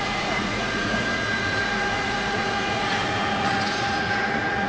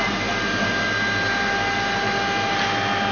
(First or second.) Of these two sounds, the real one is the second